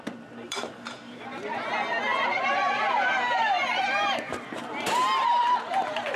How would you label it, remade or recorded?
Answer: remade